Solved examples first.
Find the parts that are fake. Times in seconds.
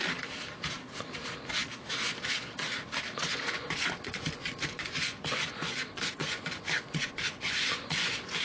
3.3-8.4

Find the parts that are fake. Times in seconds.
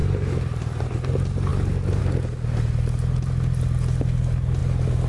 0.0-0.9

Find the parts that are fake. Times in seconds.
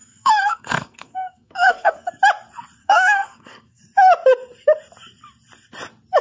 0.0-2.1; 2.8-3.8